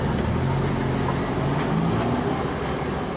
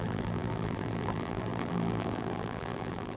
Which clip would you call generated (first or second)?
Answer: second